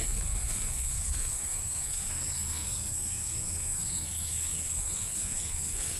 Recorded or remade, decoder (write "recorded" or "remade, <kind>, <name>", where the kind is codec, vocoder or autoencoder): remade, codec, SNAC